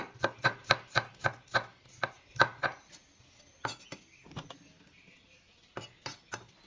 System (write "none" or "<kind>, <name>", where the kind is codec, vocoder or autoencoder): none